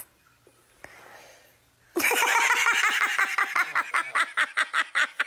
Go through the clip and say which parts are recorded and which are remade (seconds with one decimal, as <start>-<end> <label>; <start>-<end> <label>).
0.0-5.3 recorded